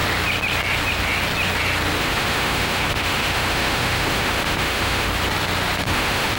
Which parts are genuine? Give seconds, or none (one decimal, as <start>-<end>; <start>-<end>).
0.0-2.0; 5.1-5.8